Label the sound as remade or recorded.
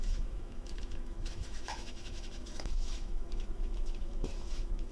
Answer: remade